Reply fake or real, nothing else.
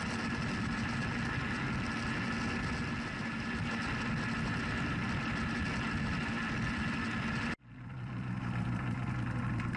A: real